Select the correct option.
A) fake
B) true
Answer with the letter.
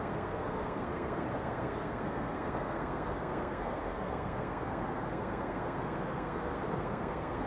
A